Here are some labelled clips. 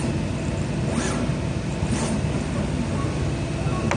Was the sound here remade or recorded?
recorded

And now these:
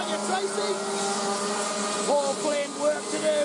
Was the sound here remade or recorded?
recorded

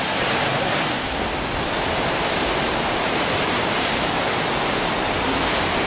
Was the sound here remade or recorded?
recorded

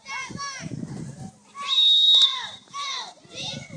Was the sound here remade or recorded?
recorded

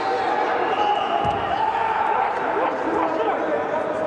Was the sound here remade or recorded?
recorded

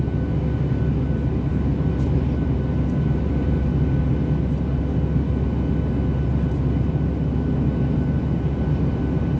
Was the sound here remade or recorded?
recorded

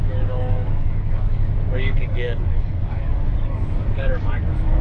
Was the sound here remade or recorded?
remade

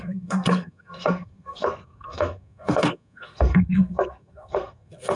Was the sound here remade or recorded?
remade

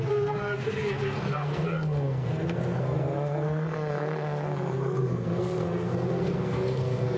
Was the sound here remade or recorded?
remade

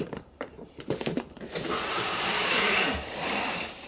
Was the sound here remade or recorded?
remade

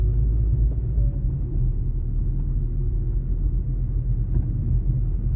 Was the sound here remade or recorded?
recorded